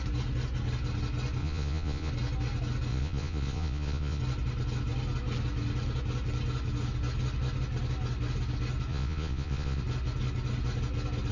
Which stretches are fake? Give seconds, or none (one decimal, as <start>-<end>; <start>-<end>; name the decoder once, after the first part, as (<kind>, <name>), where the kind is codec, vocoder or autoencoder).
1.4-2.1 (vocoder, Vocos); 2.9-4.2; 8.9-9.8